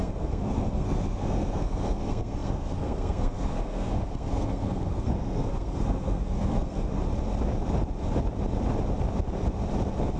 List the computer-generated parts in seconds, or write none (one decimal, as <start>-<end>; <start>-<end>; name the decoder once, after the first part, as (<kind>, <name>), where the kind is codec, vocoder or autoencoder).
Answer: 0.0-7.0 (codec, SNAC)